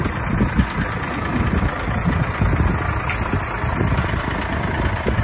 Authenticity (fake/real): real